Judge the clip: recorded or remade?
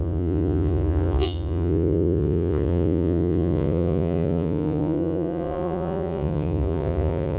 remade